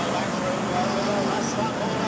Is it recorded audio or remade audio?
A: recorded